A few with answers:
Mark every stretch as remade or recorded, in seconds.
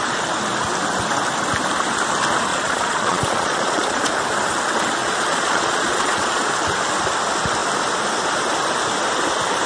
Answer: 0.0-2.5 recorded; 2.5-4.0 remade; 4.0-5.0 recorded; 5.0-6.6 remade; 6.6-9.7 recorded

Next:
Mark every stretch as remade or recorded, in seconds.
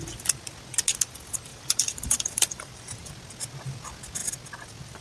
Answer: 0.0-1.5 recorded; 1.5-3.1 remade; 3.1-5.0 recorded